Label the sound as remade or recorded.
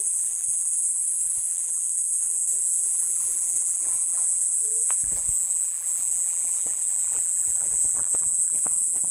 remade